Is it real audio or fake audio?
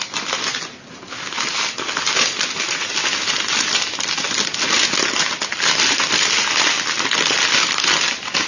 real